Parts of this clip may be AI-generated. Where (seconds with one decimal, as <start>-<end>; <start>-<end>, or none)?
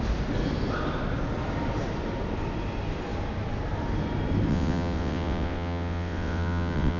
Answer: 4.5-7.0